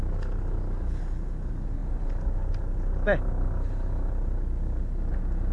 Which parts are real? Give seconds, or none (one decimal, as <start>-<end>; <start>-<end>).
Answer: 0.0-5.5